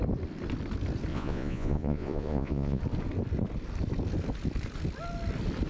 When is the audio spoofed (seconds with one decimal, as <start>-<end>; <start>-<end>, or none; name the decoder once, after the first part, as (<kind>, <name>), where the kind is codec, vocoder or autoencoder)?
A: 1.1-2.8 (vocoder, Vocos)